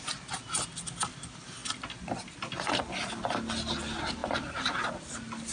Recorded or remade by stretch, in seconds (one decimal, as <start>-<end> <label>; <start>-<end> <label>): 0.0-4.2 recorded; 4.2-4.9 remade; 4.9-5.5 recorded

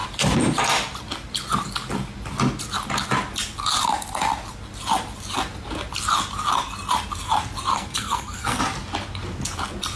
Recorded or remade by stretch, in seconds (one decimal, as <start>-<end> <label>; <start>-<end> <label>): 0.0-7.7 recorded; 7.7-8.6 remade; 8.6-10.0 recorded